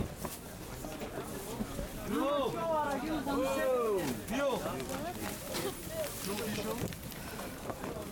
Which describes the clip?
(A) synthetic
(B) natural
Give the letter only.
B